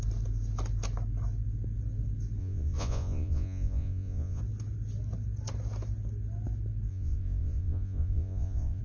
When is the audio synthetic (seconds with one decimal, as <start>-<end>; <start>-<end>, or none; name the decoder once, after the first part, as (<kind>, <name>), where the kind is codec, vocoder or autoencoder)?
2.4-4.4 (vocoder, Vocos); 6.9-8.8